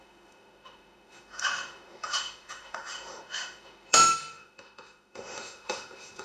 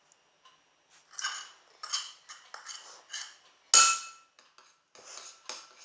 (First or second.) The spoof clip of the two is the first